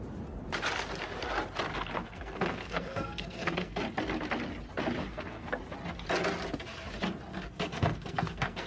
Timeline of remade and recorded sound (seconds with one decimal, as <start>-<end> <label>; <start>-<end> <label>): 0.0-2.0 recorded; 2.0-3.8 remade; 3.8-5.1 recorded; 5.1-5.6 remade; 5.6-7.3 recorded; 7.3-8.7 remade

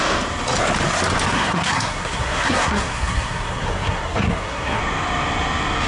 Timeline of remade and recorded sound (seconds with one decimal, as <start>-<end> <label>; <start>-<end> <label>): 0.0-1.3 recorded; 1.3-4.8 remade; 4.8-5.9 recorded

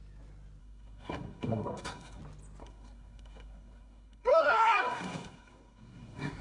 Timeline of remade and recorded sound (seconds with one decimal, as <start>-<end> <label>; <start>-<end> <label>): 0.0-0.6 recorded; 0.6-2.2 remade; 2.2-2.6 recorded; 2.6-6.4 remade

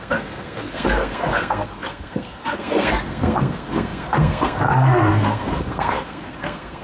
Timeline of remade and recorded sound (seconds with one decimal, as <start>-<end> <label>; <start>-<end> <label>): 0.0-6.8 remade

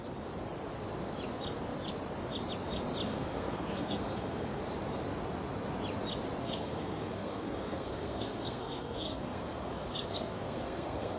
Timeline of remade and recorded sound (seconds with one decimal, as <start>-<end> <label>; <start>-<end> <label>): 0.0-3.1 recorded; 3.1-4.6 remade; 4.6-6.4 recorded; 6.4-11.2 remade

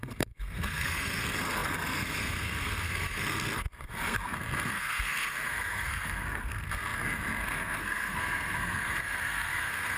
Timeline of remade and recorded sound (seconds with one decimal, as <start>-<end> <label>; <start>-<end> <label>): 0.0-10.0 remade

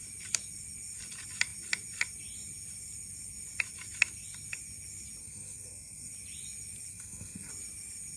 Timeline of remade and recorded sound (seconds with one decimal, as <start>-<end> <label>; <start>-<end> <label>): 0.0-5.2 recorded; 5.2-6.1 remade; 6.1-6.9 recorded; 6.9-7.5 remade; 7.5-8.2 recorded

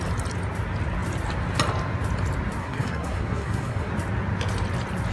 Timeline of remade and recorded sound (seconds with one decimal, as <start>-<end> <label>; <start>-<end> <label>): 0.0-2.6 recorded; 2.6-3.9 remade; 3.9-5.1 recorded